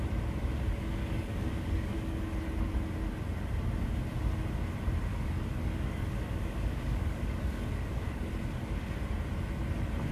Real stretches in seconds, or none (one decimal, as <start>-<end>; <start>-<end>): 0.0-1.0; 2.2-5.1; 8.3-10.1

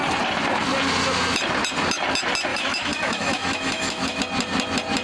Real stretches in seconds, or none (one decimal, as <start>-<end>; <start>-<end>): 0.0-2.5; 4.2-5.0

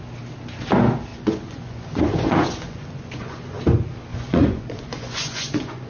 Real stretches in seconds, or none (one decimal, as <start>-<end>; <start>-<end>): 0.0-1.1; 3.6-4.1